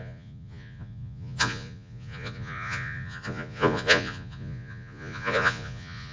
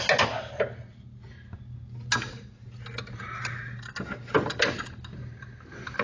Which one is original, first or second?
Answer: second